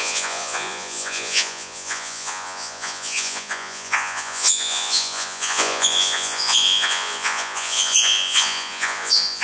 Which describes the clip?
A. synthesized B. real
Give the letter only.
A